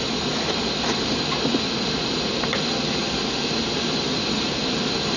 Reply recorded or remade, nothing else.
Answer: recorded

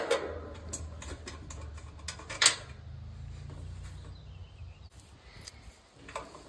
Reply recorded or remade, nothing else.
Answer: recorded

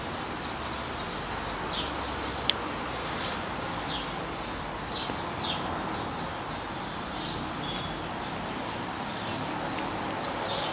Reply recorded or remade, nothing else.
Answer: recorded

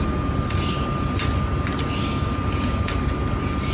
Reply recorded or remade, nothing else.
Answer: recorded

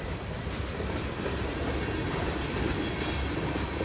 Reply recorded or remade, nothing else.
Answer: recorded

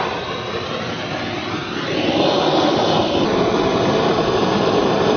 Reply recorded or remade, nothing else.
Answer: recorded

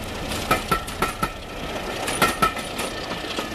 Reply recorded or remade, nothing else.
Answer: recorded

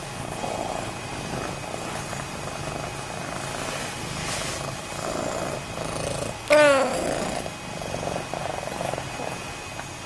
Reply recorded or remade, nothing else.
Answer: recorded